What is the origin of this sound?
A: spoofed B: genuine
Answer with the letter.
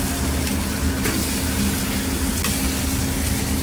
B